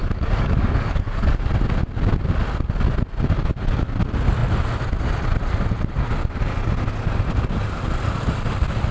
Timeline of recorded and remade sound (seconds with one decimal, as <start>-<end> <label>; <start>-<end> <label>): 0.0-1.5 remade; 1.5-8.9 recorded